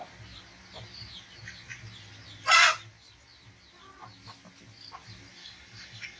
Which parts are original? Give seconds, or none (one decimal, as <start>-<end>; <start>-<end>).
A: 0.0-5.4